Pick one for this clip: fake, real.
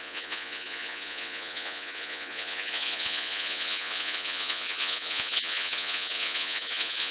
fake